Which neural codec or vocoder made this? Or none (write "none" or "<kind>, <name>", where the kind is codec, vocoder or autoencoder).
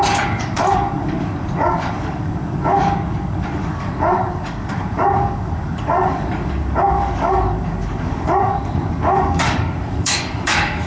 codec, DAC